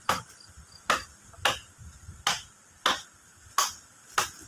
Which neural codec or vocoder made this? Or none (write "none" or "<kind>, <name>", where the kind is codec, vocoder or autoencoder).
none